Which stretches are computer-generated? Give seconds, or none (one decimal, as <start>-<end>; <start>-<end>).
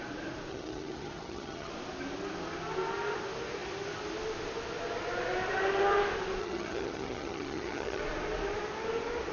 0.5-1.7; 6.4-8.0